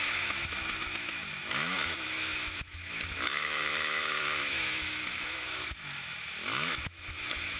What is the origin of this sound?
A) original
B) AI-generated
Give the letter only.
B